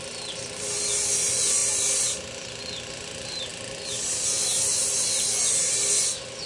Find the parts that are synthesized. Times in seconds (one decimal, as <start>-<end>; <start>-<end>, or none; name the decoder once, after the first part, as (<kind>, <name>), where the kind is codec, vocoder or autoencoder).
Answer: none